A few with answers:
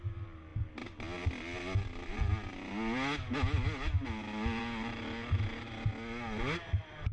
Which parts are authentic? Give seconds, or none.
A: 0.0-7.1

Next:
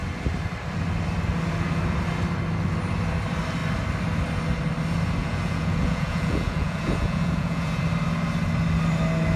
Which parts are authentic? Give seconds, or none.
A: 0.0-5.2; 7.8-9.4

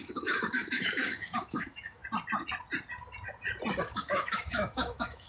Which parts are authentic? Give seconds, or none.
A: 2.0-3.8

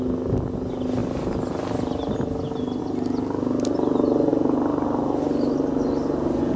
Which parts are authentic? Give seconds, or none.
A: 0.0-6.6